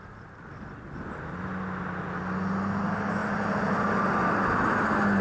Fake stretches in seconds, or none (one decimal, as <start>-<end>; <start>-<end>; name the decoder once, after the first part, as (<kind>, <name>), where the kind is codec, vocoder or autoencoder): none